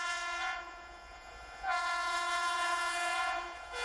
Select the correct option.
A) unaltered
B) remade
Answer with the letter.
B